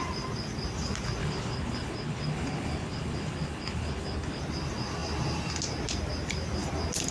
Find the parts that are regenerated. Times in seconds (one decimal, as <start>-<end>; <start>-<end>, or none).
1.2-4.4